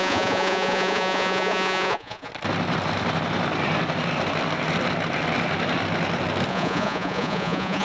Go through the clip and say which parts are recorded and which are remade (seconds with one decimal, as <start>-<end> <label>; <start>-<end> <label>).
0.0-2.3 remade; 2.3-6.5 recorded; 6.5-7.8 remade